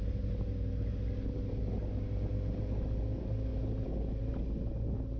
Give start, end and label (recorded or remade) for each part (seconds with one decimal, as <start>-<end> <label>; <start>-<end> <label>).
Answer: 0.0-5.2 recorded